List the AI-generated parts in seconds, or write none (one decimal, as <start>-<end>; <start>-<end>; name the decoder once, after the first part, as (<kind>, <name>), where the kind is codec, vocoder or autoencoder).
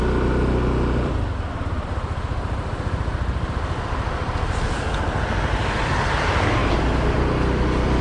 none